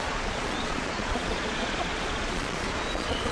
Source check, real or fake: fake